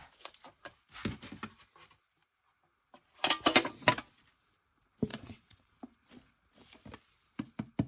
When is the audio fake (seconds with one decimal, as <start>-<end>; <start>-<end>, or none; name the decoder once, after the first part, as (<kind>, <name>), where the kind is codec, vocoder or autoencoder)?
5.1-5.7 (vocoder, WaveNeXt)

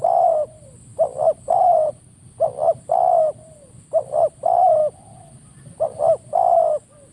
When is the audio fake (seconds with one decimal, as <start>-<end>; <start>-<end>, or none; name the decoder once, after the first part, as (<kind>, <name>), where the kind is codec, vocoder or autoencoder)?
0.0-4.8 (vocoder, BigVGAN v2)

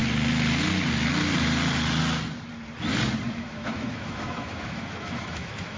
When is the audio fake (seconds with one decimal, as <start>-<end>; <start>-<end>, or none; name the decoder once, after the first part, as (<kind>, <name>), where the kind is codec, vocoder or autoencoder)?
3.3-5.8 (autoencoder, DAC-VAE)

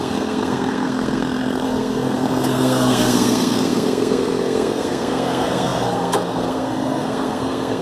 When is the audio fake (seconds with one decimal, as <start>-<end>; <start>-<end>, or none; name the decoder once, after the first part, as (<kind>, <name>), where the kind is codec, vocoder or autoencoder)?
0.0-7.8 (codec, SNAC)

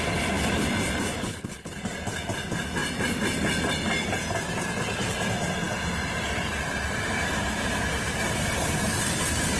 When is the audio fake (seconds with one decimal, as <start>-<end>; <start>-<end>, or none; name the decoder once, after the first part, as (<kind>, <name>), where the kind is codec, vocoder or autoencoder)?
1.2-1.8 (codec, HILCodec)

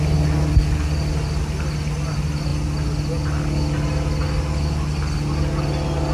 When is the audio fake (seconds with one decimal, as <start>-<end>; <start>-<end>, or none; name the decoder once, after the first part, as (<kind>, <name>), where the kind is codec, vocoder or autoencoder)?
none

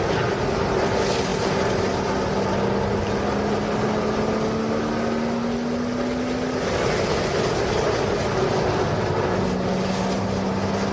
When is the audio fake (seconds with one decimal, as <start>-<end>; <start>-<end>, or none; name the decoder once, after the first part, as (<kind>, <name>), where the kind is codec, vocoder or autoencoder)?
none

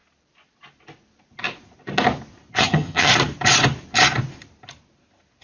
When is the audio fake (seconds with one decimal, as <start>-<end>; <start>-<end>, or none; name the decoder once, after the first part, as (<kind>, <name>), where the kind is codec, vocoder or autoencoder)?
2.6-3.1 (vocoder, HiFi-GAN)